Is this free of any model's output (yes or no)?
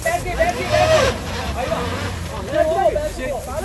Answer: yes